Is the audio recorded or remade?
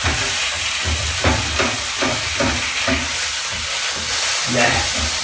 recorded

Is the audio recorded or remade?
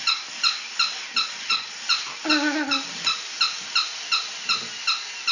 recorded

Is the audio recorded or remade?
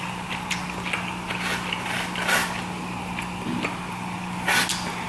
recorded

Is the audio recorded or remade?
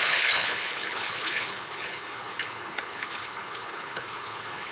remade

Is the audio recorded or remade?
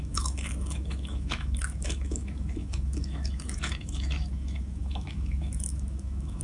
remade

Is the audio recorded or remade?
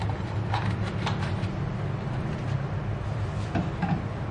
remade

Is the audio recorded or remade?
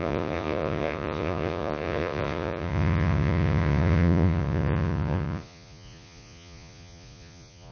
remade